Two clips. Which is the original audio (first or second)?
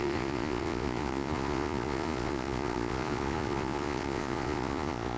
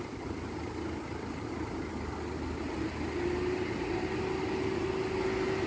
second